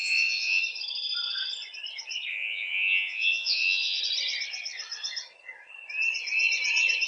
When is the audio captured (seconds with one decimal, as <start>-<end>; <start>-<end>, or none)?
0.6-2.3; 4.0-7.1